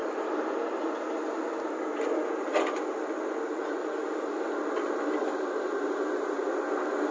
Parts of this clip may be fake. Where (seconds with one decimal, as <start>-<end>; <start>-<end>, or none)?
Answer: none